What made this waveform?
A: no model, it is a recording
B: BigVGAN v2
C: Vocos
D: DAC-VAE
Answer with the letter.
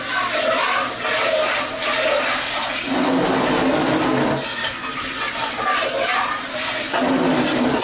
A